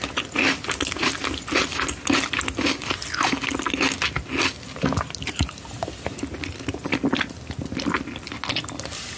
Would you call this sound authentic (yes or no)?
yes